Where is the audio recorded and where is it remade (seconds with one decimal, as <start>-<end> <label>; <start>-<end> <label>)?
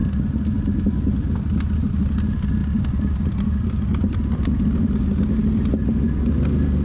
0.0-6.8 recorded